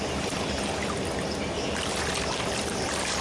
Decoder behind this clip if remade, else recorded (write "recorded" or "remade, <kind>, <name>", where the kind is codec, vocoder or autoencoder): recorded